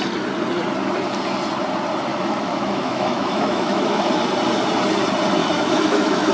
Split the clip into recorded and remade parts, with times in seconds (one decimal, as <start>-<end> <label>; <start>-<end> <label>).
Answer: 0.0-2.1 recorded; 2.1-4.1 remade; 4.1-5.4 recorded; 5.4-6.3 remade